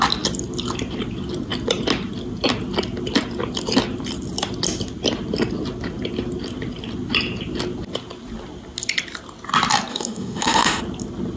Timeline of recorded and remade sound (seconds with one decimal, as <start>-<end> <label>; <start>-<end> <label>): 0.0-9.9 recorded; 9.9-10.8 remade; 10.8-11.4 recorded